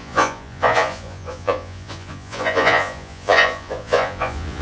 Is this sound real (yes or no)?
no